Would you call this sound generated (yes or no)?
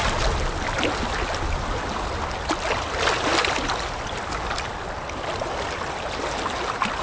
no